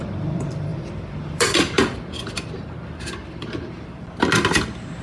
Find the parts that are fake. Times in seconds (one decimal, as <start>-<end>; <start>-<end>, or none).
0.0-5.0

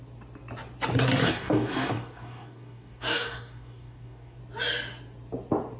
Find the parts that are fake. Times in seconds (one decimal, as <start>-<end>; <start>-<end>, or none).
1.2-4.4

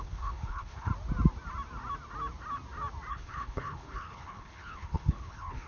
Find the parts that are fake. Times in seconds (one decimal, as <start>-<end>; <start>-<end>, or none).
0.0-0.9; 3.1-5.7